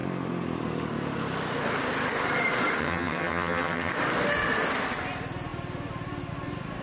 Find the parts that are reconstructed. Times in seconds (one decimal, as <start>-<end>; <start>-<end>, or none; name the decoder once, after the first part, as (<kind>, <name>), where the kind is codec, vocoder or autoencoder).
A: 2.8-3.9 (vocoder, HiFi-GAN)